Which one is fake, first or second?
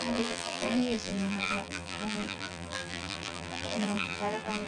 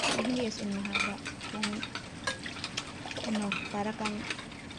first